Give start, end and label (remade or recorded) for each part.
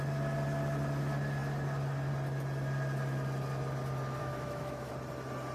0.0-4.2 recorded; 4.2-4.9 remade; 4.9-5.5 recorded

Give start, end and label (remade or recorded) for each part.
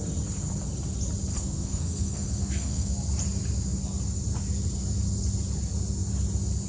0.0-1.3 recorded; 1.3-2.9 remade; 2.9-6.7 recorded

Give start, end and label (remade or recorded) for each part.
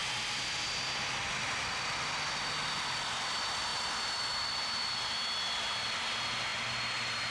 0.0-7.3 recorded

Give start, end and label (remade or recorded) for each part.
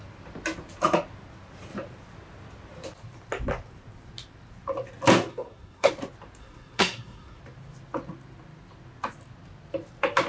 0.0-5.3 recorded; 5.3-5.9 remade; 5.9-6.4 recorded; 6.4-7.4 remade; 7.4-10.3 recorded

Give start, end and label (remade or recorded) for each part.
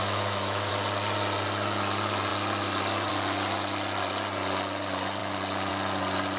0.0-0.7 remade; 0.7-6.4 recorded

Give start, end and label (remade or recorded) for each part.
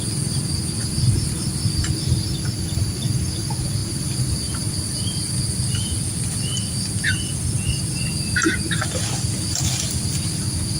0.0-0.8 recorded; 0.8-1.5 remade; 1.5-3.8 recorded; 3.8-4.7 remade; 4.7-10.8 recorded